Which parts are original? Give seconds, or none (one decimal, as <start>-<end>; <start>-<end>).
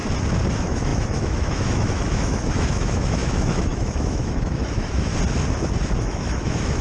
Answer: 0.0-0.5; 5.1-6.0